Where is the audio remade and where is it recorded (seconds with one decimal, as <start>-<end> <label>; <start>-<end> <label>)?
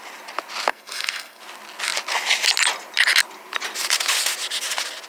0.0-0.7 recorded; 0.7-1.4 remade; 1.4-5.1 recorded